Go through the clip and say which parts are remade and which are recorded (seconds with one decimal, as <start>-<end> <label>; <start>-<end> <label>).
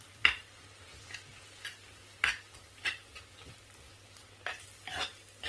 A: 0.0-5.5 recorded